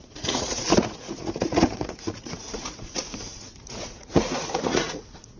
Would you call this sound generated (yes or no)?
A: yes